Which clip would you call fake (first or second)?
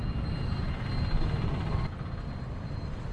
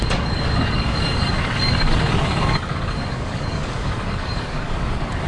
second